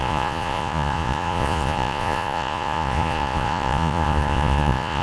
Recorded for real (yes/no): no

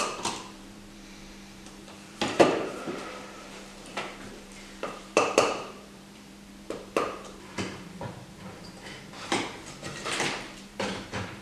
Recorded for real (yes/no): no